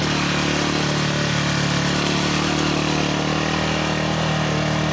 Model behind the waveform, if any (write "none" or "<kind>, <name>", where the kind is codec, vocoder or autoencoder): none